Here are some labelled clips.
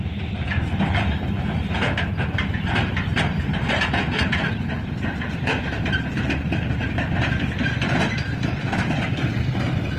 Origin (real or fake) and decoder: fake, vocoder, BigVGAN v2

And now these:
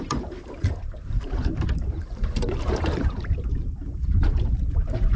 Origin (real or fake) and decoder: fake, vocoder, BigVGAN v2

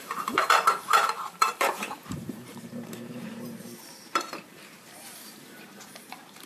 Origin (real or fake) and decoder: fake, vocoder, BigVGAN v2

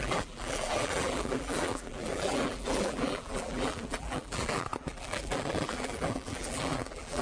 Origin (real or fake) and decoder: fake, vocoder, BigVGAN v2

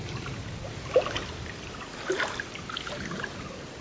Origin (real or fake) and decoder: real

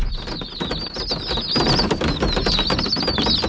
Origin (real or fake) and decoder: real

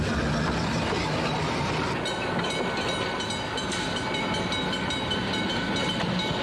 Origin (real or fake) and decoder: real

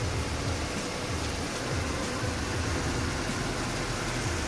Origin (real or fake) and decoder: real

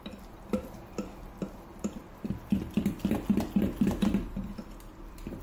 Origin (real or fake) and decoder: fake, vocoder, BigVGAN v2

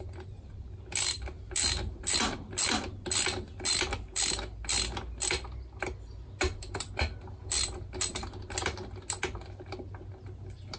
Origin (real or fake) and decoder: real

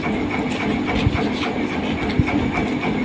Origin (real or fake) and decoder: real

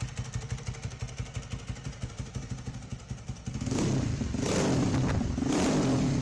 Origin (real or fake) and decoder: fake, vocoder, BigVGAN v2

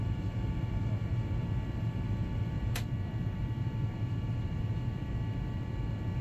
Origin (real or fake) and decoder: real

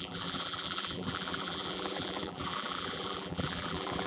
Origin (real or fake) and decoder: fake, vocoder, BigVGAN v2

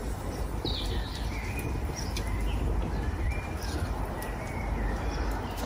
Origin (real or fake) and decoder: real